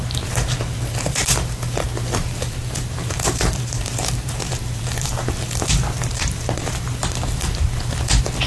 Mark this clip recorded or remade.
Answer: remade